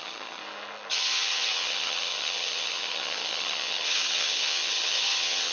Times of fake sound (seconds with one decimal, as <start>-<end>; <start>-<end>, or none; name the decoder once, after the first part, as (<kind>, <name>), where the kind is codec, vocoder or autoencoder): 0.0-0.4 (vocoder, HiFi-GAN); 0.9-5.5